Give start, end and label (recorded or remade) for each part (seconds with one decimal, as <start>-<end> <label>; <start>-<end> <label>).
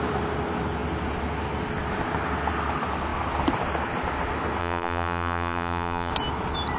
0.0-4.6 recorded; 4.6-6.1 remade; 6.1-6.8 recorded